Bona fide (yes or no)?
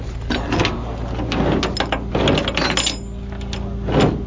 yes